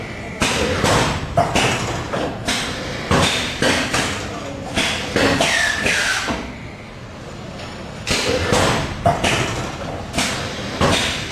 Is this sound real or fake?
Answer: fake